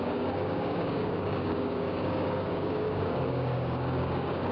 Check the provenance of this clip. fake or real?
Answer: fake